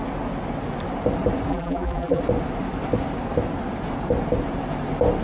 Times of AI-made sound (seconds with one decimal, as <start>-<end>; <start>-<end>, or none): 1.5-2.2